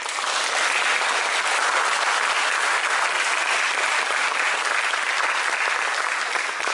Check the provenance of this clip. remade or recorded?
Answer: recorded